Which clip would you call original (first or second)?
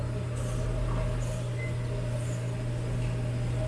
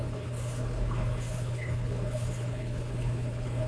first